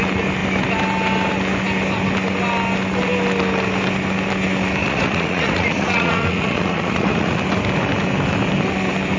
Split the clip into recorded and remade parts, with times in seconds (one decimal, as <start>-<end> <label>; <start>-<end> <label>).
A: 0.0-4.8 recorded; 4.8-7.4 remade; 7.4-9.2 recorded